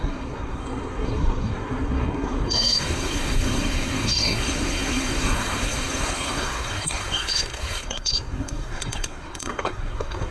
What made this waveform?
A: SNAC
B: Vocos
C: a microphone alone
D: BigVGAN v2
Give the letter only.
A